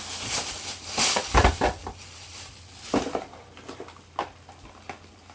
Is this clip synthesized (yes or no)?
no